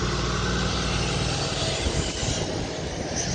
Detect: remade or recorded recorded